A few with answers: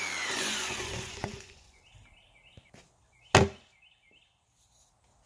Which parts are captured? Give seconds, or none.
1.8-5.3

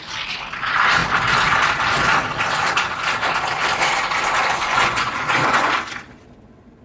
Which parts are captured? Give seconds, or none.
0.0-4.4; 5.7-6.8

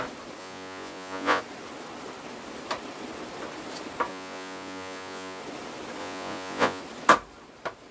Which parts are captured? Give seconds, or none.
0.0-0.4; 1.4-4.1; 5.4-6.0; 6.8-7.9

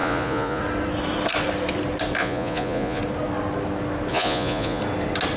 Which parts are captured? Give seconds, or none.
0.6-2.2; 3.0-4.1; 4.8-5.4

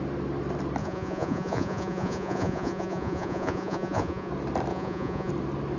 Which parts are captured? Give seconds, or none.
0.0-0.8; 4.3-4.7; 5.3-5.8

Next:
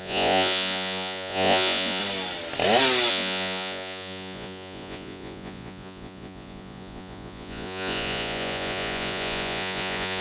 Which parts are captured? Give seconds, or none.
2.0-3.1

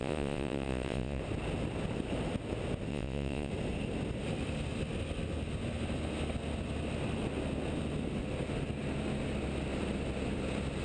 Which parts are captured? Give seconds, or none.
1.2-2.9; 3.5-10.8